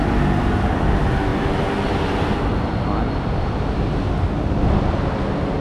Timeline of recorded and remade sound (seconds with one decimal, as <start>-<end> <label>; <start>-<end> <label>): 0.0-5.6 recorded

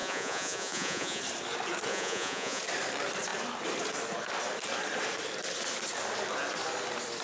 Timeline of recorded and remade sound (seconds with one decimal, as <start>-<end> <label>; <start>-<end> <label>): 0.0-1.2 remade; 1.2-1.9 recorded; 1.9-2.6 remade; 2.6-7.2 recorded

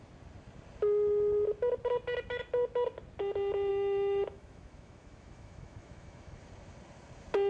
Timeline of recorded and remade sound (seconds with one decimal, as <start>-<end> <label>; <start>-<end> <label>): 0.0-3.7 recorded; 3.7-6.4 remade; 6.4-7.5 recorded